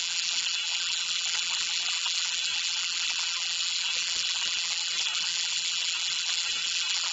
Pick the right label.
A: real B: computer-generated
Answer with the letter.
B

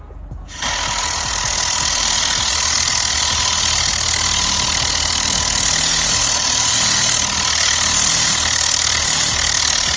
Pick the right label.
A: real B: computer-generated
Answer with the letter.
A